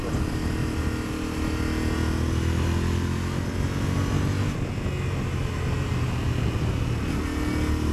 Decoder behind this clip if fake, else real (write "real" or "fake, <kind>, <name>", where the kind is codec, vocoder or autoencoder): real